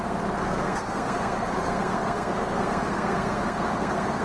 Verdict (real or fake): fake